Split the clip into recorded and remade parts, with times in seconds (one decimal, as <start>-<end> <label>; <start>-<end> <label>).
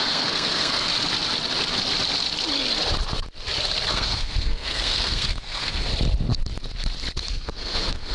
0.0-0.9 remade; 0.9-3.9 recorded; 3.9-5.9 remade; 5.9-7.3 recorded; 7.3-8.1 remade